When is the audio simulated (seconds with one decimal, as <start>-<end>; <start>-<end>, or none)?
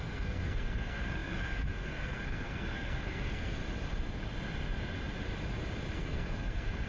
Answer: 0.0-3.6; 5.9-6.9